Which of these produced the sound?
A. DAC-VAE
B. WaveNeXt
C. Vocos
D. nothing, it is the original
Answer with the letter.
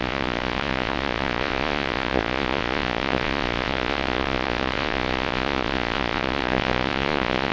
C